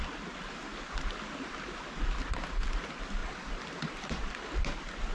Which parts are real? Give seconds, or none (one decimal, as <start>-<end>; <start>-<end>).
0.0-3.2; 4.2-5.1